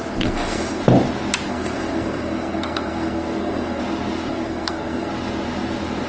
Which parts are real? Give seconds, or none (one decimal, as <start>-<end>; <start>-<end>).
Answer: 0.8-1.5; 3.8-4.3; 5.1-6.1